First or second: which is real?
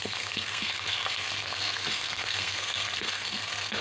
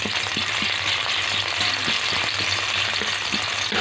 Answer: second